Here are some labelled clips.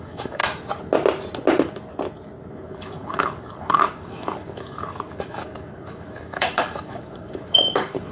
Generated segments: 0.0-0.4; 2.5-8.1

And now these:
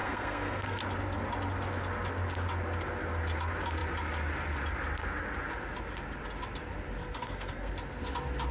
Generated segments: 0.0-0.8; 7.0-7.7

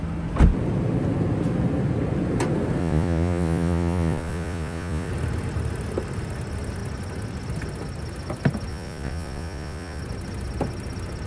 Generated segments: 2.8-5.1; 8.7-10.0

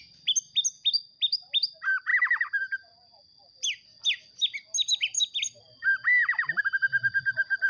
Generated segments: none